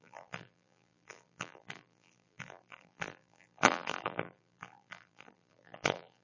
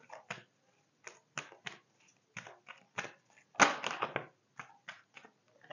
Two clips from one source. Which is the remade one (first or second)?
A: first